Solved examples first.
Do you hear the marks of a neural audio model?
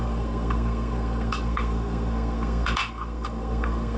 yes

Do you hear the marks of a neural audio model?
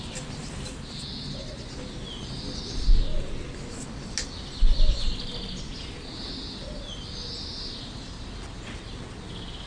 no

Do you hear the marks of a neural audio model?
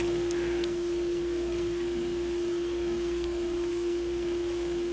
yes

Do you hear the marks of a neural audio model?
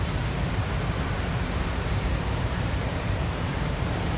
yes